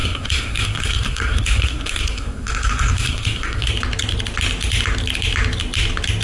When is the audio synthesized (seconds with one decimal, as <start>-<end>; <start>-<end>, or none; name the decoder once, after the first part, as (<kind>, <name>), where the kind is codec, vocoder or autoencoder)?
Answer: 0.0-3.7 (codec, SNAC)